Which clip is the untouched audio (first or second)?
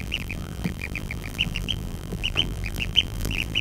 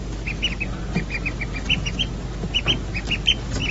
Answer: second